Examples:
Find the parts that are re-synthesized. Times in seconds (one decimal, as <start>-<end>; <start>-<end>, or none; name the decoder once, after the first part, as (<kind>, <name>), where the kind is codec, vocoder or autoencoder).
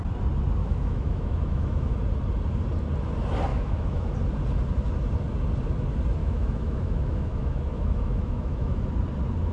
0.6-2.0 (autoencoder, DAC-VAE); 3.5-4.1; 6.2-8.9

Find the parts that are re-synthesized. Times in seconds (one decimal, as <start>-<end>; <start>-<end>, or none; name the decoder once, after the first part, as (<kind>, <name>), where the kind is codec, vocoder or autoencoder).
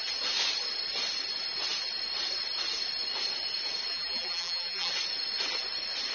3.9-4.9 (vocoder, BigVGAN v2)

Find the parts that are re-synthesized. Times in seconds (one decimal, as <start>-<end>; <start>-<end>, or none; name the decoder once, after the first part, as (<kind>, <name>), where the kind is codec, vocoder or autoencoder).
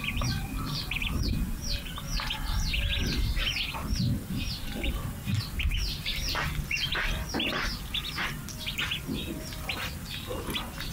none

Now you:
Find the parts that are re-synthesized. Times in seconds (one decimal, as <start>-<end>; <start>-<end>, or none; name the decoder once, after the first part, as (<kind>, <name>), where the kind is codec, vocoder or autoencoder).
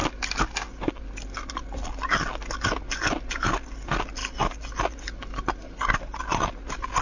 none